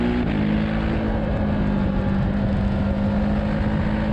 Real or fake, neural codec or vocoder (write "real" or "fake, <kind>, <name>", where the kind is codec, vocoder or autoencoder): real